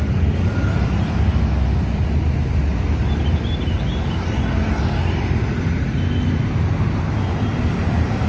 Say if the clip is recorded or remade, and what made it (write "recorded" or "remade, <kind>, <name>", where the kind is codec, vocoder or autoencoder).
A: recorded